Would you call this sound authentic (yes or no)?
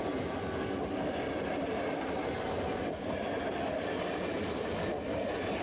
yes